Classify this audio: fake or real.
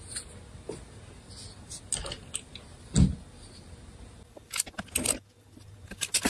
real